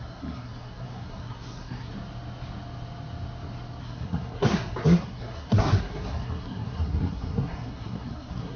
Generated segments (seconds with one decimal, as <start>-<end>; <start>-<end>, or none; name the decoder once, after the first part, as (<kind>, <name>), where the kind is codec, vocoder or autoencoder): 0.0-1.9 (codec, SNAC); 3.8-8.6